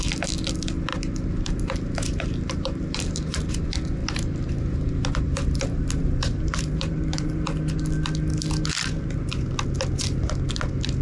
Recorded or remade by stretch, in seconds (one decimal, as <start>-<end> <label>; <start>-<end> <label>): 0.0-0.9 recorded; 0.9-3.5 remade; 3.5-4.0 recorded; 4.0-7.7 remade; 7.7-11.0 recorded